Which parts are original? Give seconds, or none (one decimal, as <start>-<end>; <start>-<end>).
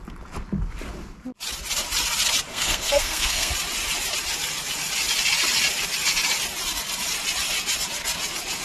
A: 0.0-2.5; 3.5-8.6